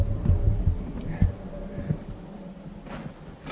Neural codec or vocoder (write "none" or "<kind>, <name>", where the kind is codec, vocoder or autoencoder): none